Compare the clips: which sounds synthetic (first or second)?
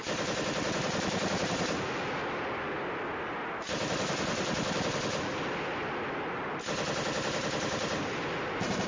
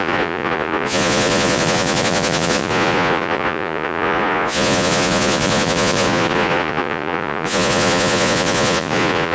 second